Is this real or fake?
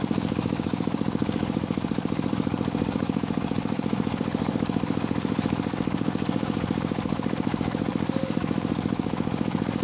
fake